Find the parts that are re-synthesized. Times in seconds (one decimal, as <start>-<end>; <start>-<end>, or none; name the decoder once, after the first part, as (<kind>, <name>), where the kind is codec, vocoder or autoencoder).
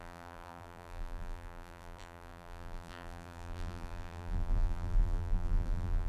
0.0-6.1 (vocoder, BigVGAN v2)